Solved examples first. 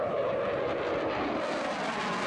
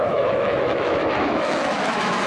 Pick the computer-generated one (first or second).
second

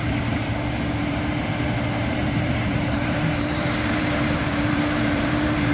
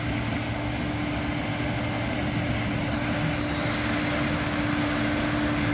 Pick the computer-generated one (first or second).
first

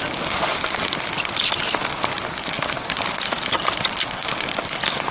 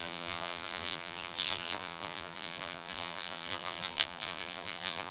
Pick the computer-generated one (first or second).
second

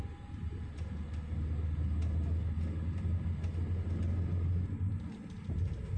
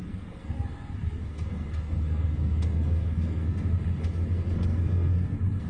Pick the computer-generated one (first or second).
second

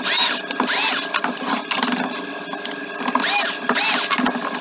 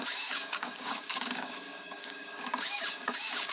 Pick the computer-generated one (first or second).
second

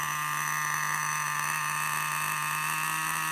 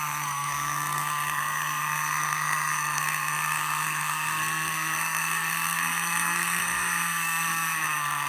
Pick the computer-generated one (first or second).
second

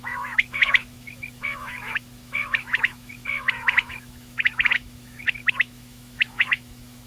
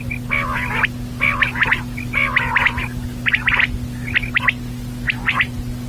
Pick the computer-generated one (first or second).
first